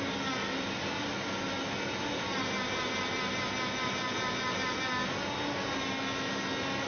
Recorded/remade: recorded